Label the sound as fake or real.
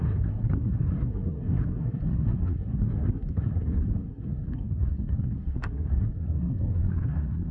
fake